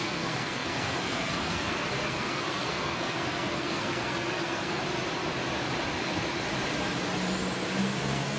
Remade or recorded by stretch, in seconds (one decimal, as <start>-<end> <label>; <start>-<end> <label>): 0.0-4.8 remade; 4.8-7.8 recorded; 7.8-8.4 remade